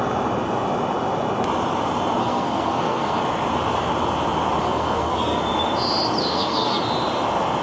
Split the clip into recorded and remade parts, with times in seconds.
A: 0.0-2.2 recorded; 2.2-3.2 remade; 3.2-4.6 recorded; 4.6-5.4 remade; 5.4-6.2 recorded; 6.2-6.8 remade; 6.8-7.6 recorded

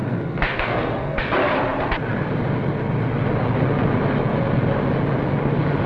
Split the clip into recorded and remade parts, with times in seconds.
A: 0.0-1.2 remade; 1.2-5.9 recorded

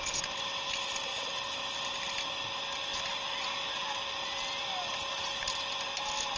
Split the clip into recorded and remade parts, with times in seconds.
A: 0.0-6.4 recorded

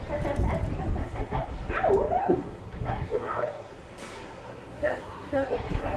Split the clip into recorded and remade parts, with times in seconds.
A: 0.0-1.0 recorded; 1.0-1.7 remade; 1.7-2.2 recorded; 2.2-6.0 remade